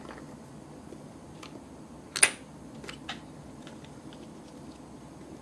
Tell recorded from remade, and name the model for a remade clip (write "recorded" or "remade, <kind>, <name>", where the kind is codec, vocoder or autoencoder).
recorded